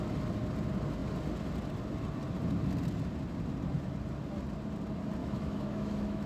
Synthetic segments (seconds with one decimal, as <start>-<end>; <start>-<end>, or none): 5.2-6.3